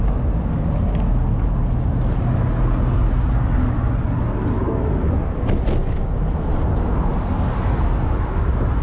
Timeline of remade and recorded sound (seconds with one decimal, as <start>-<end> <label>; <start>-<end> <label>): 0.0-8.8 recorded